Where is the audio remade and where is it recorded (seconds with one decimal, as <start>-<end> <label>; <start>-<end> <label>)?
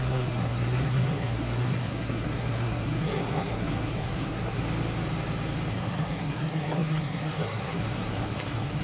0.0-4.6 remade; 4.6-5.7 recorded; 5.7-8.8 remade